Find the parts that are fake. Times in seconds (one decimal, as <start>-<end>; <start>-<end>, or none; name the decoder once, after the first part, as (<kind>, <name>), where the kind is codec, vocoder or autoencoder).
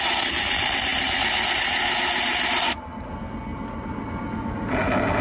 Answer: none